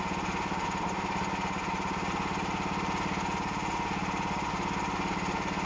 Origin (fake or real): real